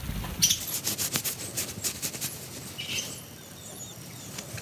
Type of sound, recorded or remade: recorded